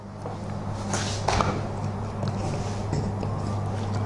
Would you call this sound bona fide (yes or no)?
yes